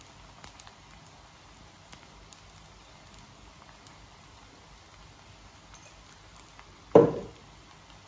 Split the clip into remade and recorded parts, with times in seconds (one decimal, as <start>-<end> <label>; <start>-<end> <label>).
0.0-8.1 recorded